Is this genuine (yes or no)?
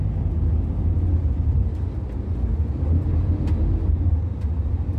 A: yes